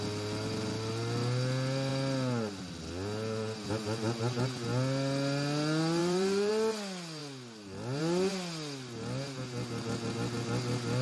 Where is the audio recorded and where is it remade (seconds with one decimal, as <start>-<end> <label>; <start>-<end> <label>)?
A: 0.0-6.0 recorded; 6.0-6.5 remade; 6.5-11.0 recorded